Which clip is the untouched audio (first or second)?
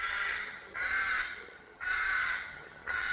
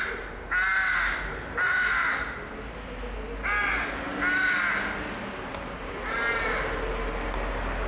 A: second